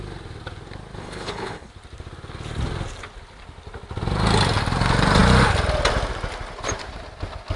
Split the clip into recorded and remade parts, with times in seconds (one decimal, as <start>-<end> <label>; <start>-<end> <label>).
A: 0.0-1.0 recorded; 1.0-1.7 remade; 1.7-7.6 recorded